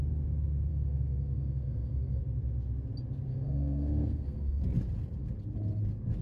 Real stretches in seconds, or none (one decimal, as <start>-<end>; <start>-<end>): 0.0-0.7; 2.2-3.3; 4.6-6.2